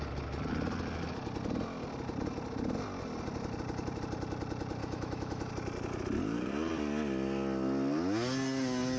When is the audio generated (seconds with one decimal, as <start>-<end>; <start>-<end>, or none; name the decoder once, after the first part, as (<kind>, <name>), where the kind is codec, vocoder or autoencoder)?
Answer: 4.8-5.5 (autoencoder, DAC-VAE)